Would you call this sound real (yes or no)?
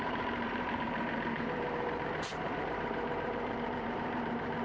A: no